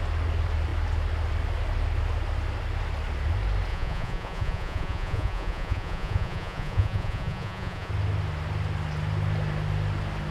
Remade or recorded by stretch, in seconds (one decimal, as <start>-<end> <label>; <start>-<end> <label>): 0.0-3.7 recorded; 3.7-7.9 remade; 7.9-10.3 recorded